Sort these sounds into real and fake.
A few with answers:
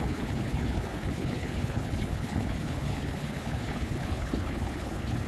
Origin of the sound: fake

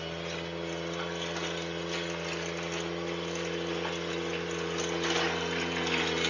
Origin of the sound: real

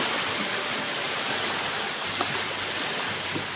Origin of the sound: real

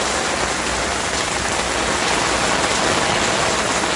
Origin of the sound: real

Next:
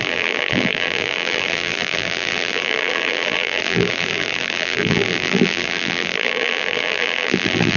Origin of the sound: fake